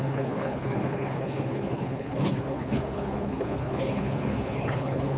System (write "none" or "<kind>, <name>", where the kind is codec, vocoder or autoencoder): codec, HILCodec